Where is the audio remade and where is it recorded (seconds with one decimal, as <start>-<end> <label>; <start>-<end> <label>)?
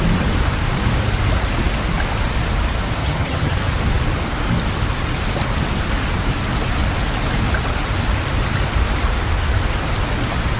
0.0-3.0 recorded; 3.0-3.6 remade; 3.6-10.6 recorded